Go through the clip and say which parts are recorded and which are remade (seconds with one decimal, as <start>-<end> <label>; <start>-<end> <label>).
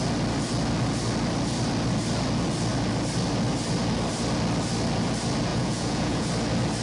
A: 0.0-5.5 recorded; 5.5-6.3 remade; 6.3-6.8 recorded